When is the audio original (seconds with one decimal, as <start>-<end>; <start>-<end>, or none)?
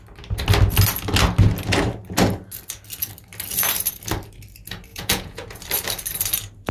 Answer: 0.0-4.9; 5.6-6.7